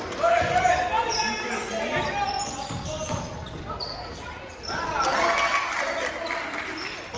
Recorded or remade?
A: recorded